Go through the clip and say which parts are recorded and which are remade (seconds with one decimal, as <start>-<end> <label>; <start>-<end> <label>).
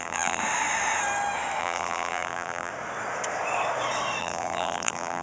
0.0-0.4 remade; 0.4-1.6 recorded; 1.6-2.7 remade; 2.7-4.2 recorded; 4.2-5.2 remade